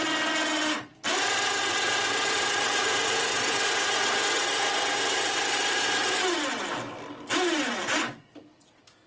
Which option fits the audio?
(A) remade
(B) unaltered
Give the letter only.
B